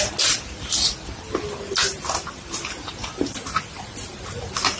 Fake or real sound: real